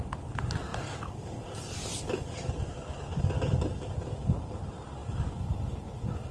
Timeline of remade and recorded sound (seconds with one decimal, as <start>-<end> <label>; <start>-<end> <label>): 0.0-6.3 recorded

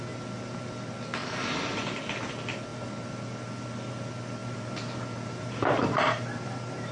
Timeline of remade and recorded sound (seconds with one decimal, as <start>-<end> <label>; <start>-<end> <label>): 0.0-1.2 recorded; 1.2-2.0 remade; 2.0-4.4 recorded; 4.4-6.9 remade

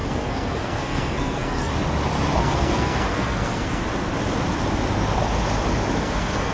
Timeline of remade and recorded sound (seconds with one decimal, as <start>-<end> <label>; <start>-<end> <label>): 0.0-1.7 remade; 1.7-2.4 recorded; 2.4-3.8 remade; 3.8-6.0 recorded; 6.0-6.5 remade

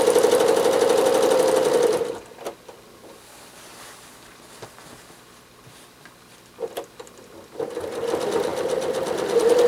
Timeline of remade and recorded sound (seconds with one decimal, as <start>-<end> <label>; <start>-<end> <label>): 0.0-8.5 recorded; 8.5-9.7 remade

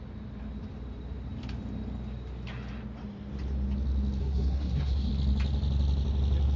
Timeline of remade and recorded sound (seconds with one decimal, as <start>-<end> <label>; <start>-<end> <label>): 0.0-4.2 recorded; 4.2-5.1 remade; 5.1-6.6 recorded

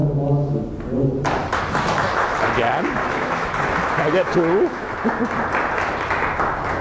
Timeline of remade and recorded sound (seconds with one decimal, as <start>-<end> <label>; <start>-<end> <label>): 0.0-0.6 remade; 0.6-1.4 recorded; 1.4-2.4 remade; 2.4-3.0 recorded; 3.0-4.9 remade; 4.9-6.8 recorded